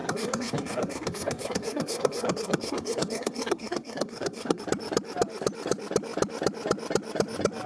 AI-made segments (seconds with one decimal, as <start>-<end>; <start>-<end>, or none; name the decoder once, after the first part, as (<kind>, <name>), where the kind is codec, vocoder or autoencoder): 0.0-4.6 (codec, SNAC)